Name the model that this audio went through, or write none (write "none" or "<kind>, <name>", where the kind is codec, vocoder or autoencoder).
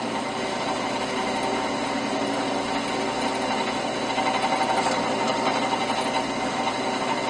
none